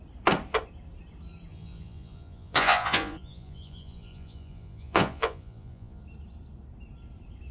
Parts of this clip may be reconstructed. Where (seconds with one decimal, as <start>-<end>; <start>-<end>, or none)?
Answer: 1.5-6.0